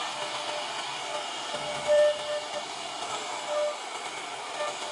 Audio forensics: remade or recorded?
recorded